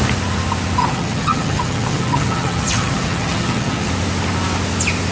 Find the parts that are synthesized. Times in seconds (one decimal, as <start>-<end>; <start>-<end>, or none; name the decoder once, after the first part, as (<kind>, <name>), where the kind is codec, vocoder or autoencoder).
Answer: 0.8-3.9 (vocoder, HiFi-GAN)